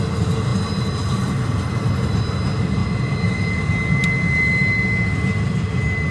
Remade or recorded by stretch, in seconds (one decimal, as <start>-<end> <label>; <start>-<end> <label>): 0.0-6.1 recorded